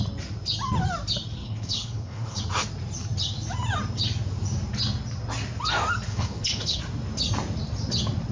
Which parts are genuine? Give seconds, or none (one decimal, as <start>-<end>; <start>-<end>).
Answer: 0.0-1.4; 2.4-6.1; 6.8-8.3